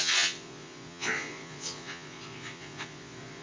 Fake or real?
fake